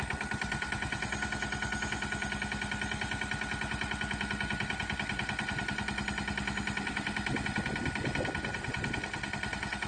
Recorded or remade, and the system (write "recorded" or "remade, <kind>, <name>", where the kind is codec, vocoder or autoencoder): recorded